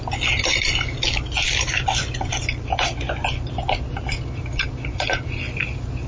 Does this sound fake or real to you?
real